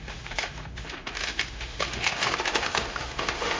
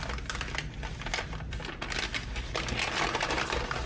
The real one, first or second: second